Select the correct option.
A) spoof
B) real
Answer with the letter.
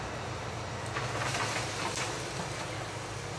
B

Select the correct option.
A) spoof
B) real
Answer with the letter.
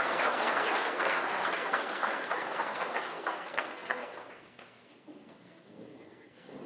A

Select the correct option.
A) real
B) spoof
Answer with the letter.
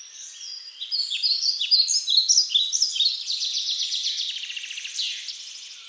A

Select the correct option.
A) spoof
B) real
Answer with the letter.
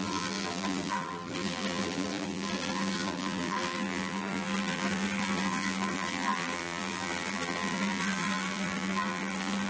A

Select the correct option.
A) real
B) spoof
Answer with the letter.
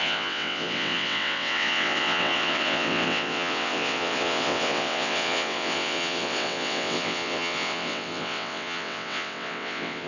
B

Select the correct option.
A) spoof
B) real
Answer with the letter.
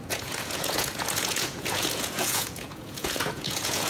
A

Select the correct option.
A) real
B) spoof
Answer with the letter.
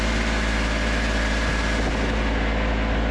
A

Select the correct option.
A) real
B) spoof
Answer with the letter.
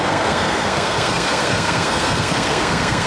B